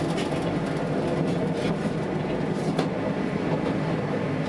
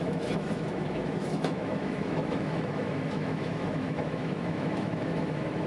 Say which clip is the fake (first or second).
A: second